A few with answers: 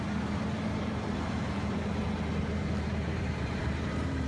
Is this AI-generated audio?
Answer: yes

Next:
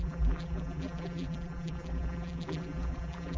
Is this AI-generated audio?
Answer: yes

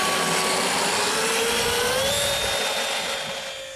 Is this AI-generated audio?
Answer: no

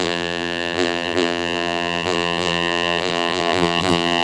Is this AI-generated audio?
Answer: yes